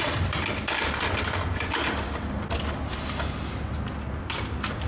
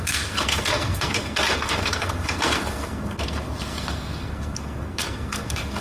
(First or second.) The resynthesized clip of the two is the second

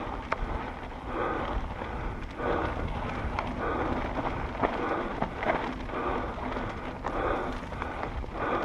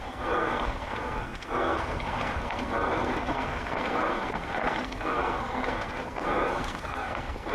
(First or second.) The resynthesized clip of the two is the second